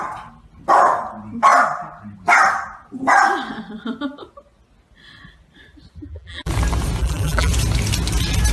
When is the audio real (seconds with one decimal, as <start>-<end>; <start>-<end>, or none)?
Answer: 0.0-6.0; 6.5-7.0; 7.5-8.5